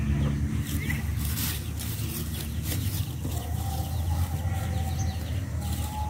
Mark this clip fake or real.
real